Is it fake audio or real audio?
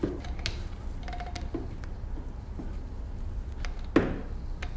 real